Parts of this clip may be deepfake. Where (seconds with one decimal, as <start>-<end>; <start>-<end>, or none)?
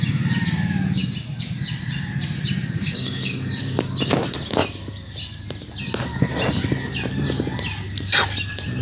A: 2.8-3.6